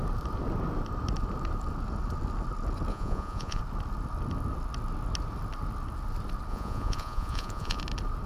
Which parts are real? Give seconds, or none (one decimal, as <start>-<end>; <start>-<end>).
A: 0.0-2.9; 3.6-6.5; 7.8-8.3